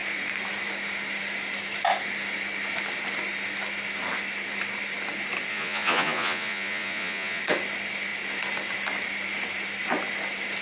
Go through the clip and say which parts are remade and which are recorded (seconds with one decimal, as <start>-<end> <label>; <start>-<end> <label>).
0.0-5.5 recorded; 5.5-7.4 remade; 7.4-10.6 recorded